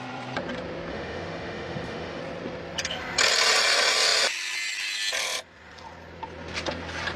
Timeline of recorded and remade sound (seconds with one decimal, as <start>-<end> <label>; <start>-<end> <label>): 0.0-0.9 recorded; 0.9-2.2 remade; 2.2-7.2 recorded